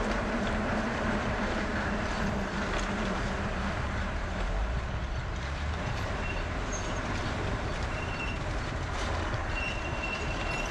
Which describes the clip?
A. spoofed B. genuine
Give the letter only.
A